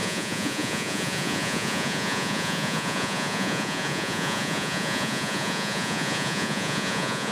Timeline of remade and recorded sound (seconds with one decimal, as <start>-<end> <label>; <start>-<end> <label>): 0.0-7.3 remade